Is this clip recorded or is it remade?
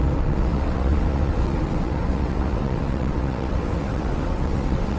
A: remade